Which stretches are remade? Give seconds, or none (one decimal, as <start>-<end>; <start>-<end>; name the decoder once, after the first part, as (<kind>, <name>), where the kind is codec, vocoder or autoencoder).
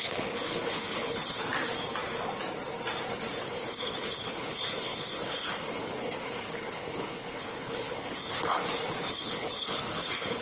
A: 0.0-1.4 (codec, HILCodec); 3.4-8.6; 9.1-10.4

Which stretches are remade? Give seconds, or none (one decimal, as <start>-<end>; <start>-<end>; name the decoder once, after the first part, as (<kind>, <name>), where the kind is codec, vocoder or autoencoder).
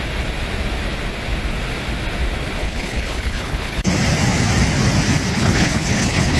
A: 2.6-3.9 (codec, HILCodec); 5.3-6.4